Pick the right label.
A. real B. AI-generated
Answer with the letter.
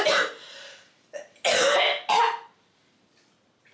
A